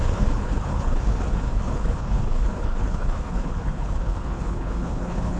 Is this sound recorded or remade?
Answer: remade